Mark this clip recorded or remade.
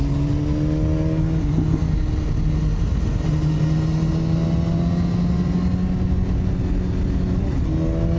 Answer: recorded